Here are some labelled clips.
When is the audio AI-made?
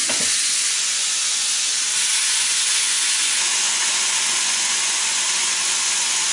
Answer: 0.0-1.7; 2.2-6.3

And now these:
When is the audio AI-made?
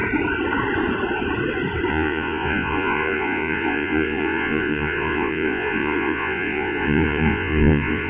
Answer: 1.9-8.1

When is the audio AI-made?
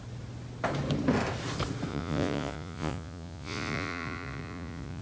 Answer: 1.9-5.0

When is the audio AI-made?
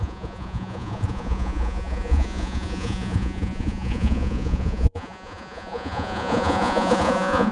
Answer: 0.0-7.5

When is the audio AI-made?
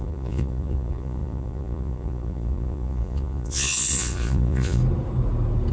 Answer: 0.0-4.8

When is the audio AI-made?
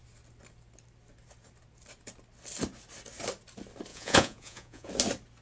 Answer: 3.9-4.9